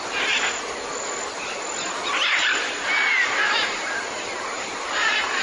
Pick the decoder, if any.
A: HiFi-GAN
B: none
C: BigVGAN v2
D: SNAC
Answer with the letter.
C